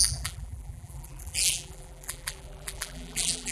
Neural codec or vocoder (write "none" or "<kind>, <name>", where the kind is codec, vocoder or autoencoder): vocoder, BigVGAN v2